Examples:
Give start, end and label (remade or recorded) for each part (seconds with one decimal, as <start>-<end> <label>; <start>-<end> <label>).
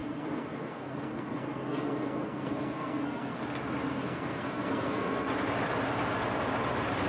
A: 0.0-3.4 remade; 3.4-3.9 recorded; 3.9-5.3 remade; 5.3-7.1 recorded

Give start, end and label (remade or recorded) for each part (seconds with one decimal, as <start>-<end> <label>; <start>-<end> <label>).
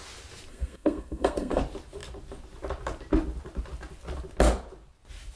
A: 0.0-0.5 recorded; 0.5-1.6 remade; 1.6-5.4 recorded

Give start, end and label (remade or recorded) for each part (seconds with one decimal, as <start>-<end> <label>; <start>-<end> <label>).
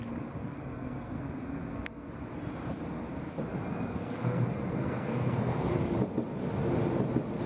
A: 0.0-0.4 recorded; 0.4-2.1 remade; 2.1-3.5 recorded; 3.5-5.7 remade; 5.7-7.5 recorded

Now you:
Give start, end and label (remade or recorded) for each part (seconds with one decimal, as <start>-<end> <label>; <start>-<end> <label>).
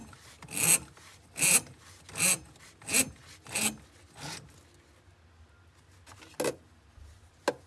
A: 0.0-7.7 recorded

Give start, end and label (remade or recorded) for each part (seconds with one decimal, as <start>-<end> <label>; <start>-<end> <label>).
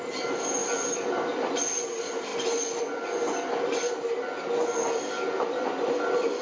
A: 0.0-6.4 recorded